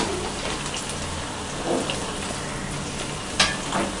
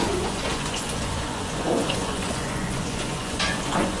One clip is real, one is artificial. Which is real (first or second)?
first